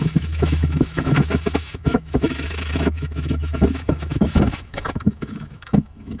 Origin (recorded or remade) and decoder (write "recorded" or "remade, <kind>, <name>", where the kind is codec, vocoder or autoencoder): remade, autoencoder, DAC-VAE